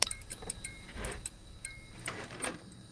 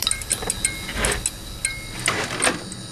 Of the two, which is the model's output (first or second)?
first